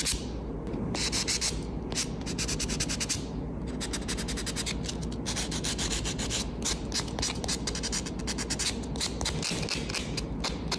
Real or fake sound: real